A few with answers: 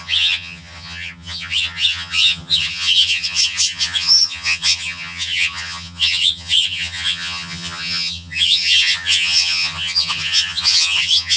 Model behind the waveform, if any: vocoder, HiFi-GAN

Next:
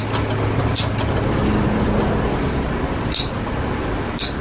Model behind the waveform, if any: none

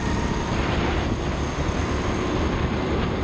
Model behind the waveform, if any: none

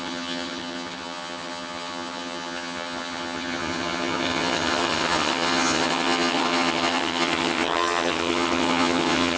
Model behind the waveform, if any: vocoder, HiFi-GAN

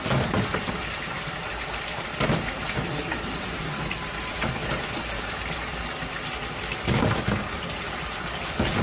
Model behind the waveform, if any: none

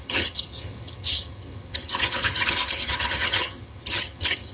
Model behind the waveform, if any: vocoder, HiFi-GAN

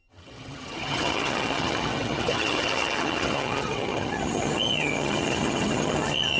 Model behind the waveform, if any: vocoder, HiFi-GAN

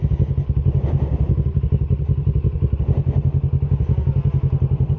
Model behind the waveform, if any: none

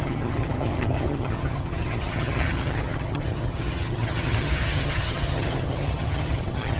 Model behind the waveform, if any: vocoder, HiFi-GAN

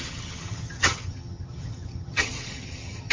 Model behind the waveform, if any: vocoder, HiFi-GAN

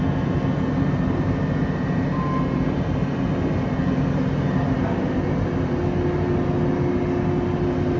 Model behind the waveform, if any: none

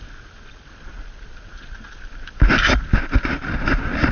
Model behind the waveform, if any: none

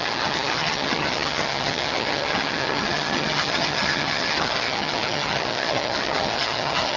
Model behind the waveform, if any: vocoder, HiFi-GAN